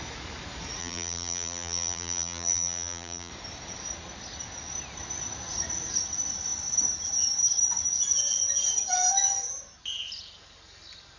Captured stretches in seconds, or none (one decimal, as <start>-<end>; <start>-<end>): 0.0-0.8; 3.3-11.2